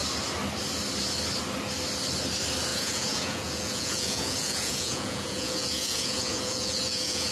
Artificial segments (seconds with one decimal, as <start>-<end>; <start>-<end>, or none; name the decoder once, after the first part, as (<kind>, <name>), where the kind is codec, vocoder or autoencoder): 2.7-7.3 (vocoder, Vocos)